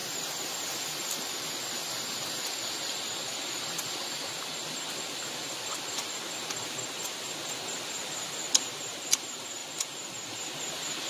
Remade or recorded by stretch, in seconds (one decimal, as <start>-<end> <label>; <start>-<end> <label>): 0.0-11.1 recorded

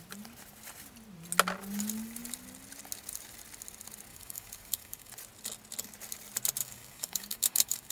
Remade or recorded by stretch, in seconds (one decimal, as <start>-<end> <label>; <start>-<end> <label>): 0.0-4.1 recorded; 4.1-5.1 remade; 5.1-6.6 recorded; 6.6-7.9 remade

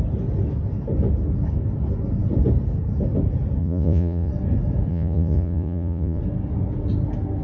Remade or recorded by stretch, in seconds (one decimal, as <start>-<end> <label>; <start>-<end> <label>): 0.0-3.6 recorded; 3.6-4.3 remade; 4.3-4.9 recorded; 4.9-6.2 remade; 6.2-7.4 recorded

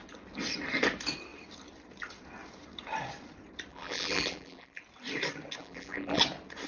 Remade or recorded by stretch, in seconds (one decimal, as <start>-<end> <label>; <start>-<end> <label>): 0.0-3.7 recorded; 3.7-4.8 remade; 4.8-5.6 recorded; 5.6-6.2 remade; 6.2-6.7 recorded

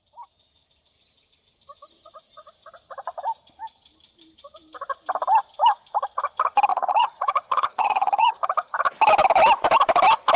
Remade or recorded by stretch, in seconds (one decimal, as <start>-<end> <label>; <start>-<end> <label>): 0.0-6.7 recorded; 6.7-8.3 remade; 8.3-10.4 recorded

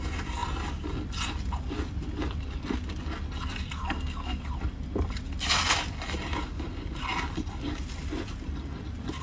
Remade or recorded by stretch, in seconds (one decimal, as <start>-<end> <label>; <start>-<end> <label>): 0.0-3.8 recorded; 3.8-4.4 remade; 4.4-9.2 recorded

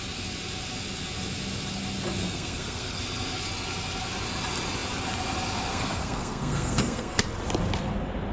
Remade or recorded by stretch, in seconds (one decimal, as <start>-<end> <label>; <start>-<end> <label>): 0.0-2.2 recorded; 2.2-3.0 remade; 3.0-5.7 recorded; 5.7-7.2 remade; 7.2-8.3 recorded

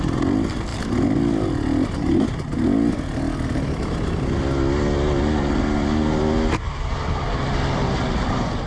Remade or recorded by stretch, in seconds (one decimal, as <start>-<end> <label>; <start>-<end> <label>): 0.0-8.7 recorded